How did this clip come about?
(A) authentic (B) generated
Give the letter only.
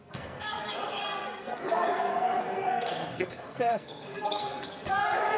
B